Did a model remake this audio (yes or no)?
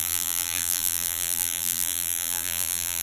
yes